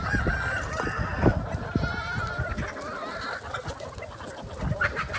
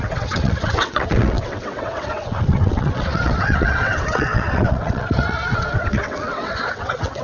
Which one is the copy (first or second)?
second